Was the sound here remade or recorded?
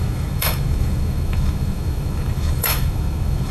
remade